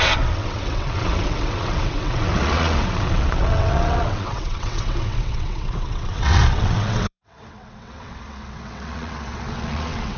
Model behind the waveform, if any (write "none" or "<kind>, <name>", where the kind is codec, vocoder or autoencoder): vocoder, WaveNeXt